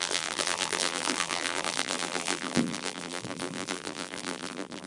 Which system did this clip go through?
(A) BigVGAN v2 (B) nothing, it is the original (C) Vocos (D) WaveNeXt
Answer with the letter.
A